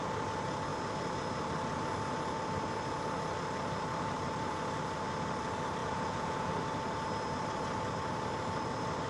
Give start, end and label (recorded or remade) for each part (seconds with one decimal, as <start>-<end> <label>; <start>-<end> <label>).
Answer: 0.0-5.8 recorded; 5.8-6.5 remade; 6.5-9.1 recorded